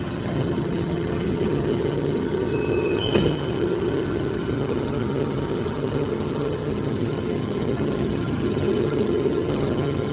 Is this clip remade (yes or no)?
yes